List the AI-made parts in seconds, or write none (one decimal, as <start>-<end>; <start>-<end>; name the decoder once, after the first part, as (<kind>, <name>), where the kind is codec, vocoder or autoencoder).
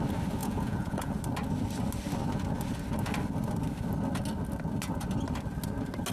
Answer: 0.4-1.2 (vocoder, Vocos)